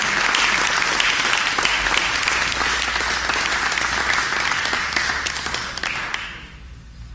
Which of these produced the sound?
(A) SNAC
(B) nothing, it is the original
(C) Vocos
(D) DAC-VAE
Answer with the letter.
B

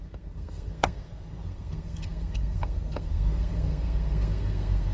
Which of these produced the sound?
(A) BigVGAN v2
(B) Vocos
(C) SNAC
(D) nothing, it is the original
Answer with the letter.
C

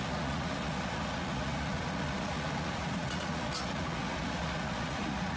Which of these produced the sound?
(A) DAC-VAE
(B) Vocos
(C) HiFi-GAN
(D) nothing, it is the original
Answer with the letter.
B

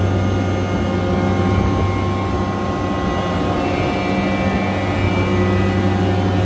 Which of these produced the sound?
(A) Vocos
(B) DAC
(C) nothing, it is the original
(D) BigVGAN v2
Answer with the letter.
C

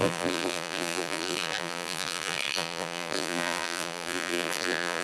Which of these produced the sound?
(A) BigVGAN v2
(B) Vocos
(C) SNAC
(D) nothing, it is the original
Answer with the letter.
A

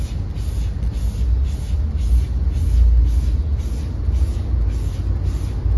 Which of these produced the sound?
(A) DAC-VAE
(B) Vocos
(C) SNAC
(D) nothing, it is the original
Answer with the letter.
D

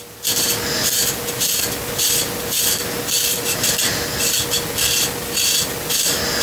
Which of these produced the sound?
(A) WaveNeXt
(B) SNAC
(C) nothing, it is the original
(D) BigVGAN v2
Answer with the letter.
C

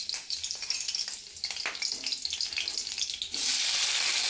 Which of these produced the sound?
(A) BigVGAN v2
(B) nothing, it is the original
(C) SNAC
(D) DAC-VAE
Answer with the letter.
B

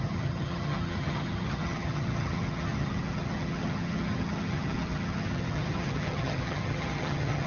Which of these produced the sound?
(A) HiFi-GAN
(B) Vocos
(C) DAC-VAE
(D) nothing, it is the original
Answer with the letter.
A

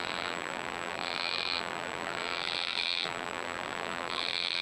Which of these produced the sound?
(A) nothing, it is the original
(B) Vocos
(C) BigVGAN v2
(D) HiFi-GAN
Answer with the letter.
C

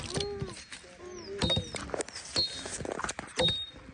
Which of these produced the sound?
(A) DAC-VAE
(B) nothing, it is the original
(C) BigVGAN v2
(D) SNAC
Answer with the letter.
B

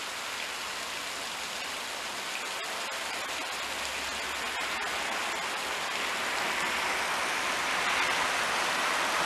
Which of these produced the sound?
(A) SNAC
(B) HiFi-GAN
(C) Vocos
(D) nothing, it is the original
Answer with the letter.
D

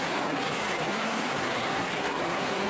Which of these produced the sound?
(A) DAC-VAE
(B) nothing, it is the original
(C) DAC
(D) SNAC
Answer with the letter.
D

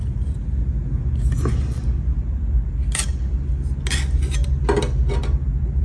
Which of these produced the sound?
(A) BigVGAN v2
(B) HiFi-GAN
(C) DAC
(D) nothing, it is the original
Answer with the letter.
D